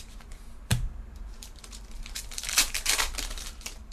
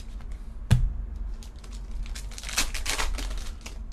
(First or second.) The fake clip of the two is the first